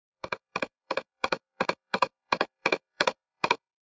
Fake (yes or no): yes